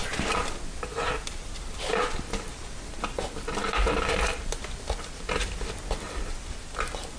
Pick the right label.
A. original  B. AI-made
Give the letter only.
A